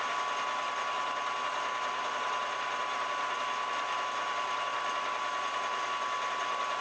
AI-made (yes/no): no